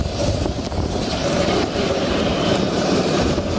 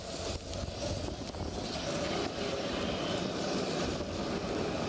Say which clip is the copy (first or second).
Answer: first